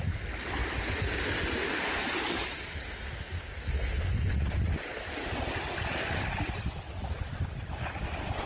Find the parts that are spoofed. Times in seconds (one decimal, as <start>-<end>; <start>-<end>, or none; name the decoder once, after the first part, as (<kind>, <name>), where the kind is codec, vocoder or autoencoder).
none